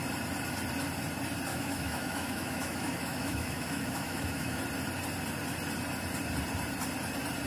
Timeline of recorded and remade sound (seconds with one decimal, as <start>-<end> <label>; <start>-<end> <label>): 0.0-1.5 recorded; 1.5-4.6 remade; 4.6-7.5 recorded